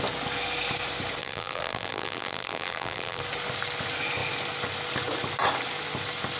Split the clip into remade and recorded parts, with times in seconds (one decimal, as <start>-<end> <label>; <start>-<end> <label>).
0.0-1.2 recorded; 1.2-3.2 remade; 3.2-6.4 recorded